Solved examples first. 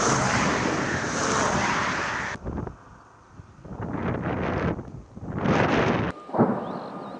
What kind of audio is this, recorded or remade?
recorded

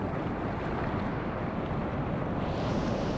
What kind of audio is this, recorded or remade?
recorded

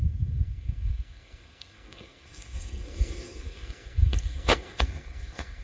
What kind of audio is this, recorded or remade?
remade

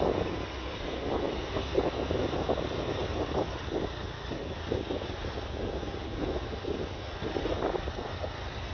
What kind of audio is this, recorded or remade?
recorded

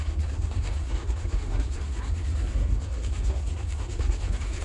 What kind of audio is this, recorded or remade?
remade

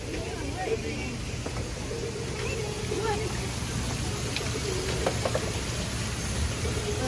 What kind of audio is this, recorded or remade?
recorded